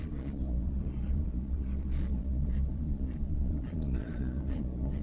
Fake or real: fake